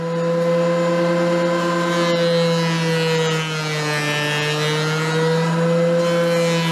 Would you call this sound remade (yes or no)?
no